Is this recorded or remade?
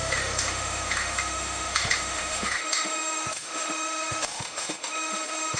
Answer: remade